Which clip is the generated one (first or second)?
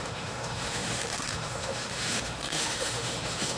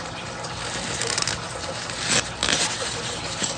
first